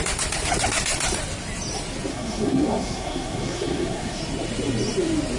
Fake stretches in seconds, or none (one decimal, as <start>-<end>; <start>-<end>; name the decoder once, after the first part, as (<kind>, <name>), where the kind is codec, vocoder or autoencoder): 2.1-4.2 (codec, SNAC)